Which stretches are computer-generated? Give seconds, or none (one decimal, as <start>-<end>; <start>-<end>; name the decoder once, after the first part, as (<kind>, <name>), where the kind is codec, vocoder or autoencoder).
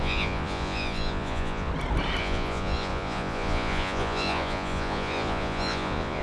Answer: 0.0-1.7 (vocoder, Vocos); 2.2-6.2